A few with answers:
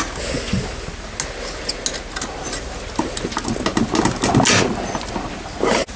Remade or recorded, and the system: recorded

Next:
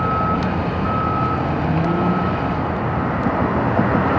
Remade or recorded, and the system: recorded